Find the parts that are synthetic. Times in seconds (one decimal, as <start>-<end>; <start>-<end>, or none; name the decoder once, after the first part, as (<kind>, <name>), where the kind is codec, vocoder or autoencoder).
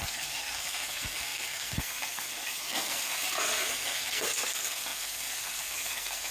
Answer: 0.0-6.3 (codec, SNAC)